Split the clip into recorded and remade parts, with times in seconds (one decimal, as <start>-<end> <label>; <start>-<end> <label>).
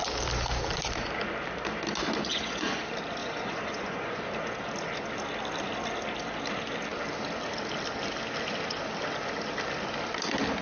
0.0-2.3 recorded; 2.3-2.8 remade; 2.8-3.2 recorded; 3.2-4.2 remade; 4.2-10.6 recorded